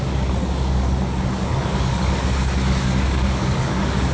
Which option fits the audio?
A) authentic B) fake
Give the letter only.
B